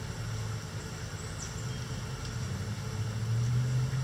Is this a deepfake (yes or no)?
no